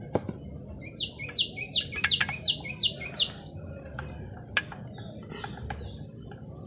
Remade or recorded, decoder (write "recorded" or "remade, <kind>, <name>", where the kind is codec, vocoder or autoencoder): recorded